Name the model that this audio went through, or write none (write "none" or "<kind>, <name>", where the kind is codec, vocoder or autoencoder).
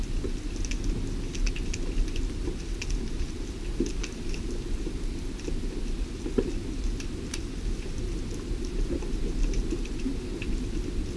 none